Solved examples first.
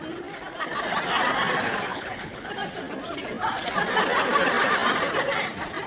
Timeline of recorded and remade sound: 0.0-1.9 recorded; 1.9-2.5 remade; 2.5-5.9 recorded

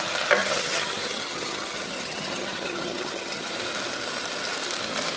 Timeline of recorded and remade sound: 0.0-0.4 recorded; 0.4-3.5 remade; 3.5-5.2 recorded

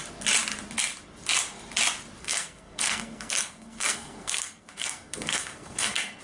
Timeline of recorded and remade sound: 0.0-2.2 recorded; 2.2-6.2 remade

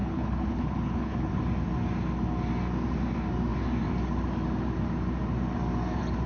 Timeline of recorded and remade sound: 0.0-1.4 remade; 1.4-6.3 recorded

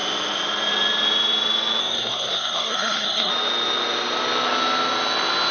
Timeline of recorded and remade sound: 0.0-1.8 recorded; 1.8-3.3 remade; 3.3-5.5 recorded

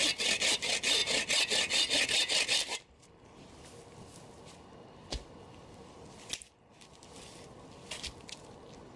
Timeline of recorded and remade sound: 0.0-9.0 recorded

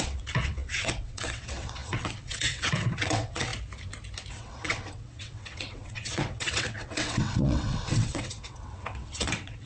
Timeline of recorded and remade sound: 0.0-3.5 remade; 3.5-4.3 recorded; 4.3-9.7 remade

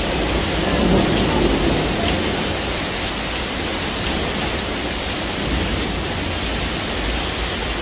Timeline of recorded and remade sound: 0.0-7.8 recorded